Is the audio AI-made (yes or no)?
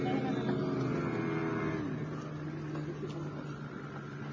no